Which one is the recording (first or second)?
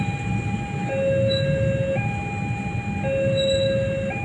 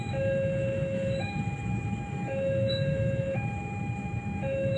first